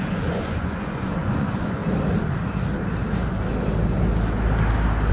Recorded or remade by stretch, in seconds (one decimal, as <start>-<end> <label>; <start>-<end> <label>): 0.0-1.8 remade; 1.8-5.1 recorded